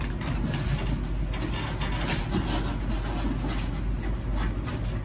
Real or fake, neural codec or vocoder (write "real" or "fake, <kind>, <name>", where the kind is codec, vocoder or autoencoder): real